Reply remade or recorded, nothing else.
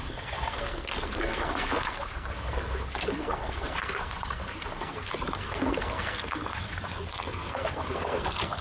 remade